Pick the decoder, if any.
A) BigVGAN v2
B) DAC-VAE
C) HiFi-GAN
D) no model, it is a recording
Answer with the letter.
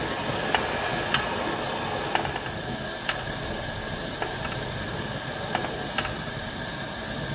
D